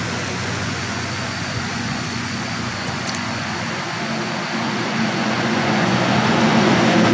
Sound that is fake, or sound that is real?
fake